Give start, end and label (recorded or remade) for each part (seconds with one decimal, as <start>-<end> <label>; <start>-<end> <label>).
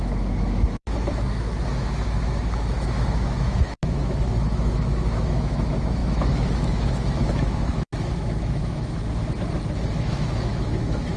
0.0-9.0 remade; 9.0-9.9 recorded; 9.9-11.2 remade